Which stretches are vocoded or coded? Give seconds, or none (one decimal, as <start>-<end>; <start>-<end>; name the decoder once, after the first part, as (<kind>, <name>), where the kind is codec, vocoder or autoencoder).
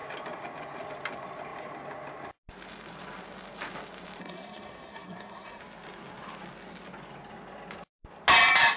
4.2-5.6 (codec, SNAC)